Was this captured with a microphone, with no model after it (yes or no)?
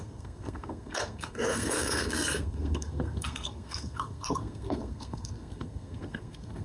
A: no